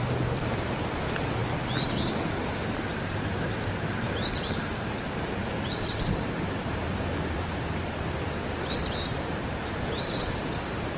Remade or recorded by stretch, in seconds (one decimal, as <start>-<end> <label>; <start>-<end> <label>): 0.0-11.0 remade